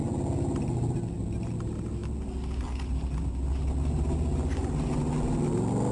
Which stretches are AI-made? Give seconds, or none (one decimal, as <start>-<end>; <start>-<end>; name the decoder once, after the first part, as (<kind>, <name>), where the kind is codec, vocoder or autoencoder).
none